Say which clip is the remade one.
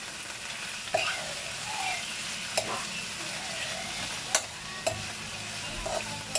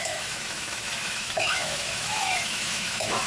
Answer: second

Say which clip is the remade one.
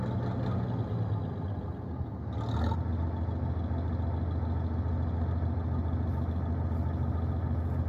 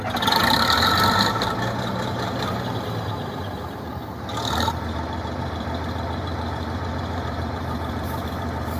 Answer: second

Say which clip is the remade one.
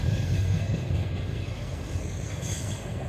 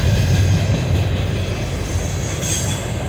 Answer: first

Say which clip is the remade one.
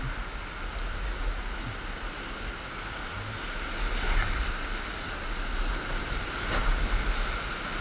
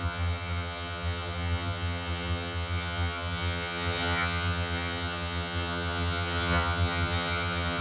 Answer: second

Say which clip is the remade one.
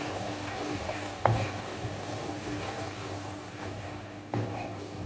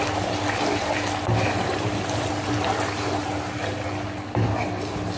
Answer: first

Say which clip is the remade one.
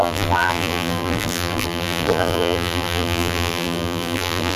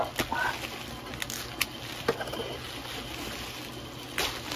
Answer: first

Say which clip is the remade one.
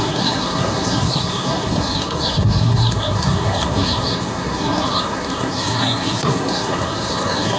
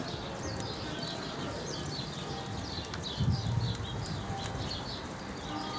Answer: first